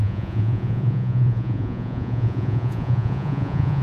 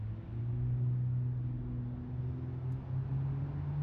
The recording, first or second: second